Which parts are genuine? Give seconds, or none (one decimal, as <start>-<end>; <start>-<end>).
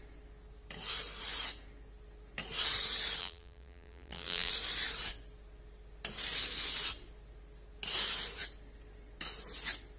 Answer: 0.0-3.2; 4.5-10.0